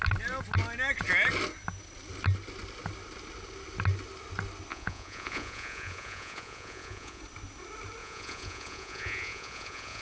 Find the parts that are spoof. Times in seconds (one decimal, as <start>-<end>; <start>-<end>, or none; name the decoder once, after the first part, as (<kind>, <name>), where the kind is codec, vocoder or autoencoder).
4.7-7.2 (vocoder, Vocos); 8.0-10.0